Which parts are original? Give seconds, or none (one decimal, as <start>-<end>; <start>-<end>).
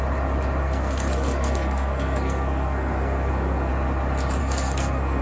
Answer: 0.0-0.6; 3.7-4.4